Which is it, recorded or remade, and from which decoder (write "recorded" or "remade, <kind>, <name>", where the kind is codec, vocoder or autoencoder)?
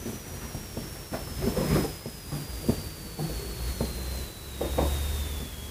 recorded